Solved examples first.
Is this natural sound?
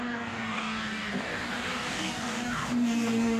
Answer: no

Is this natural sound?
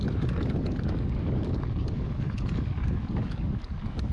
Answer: no